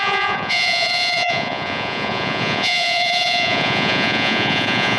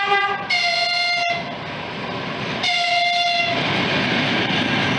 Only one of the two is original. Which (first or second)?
second